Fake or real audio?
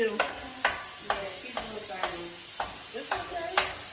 real